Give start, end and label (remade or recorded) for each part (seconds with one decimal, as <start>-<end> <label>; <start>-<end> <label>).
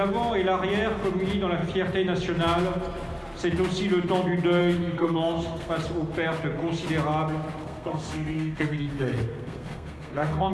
0.0-4.6 recorded; 4.6-5.7 remade; 5.7-7.6 recorded; 7.6-10.5 remade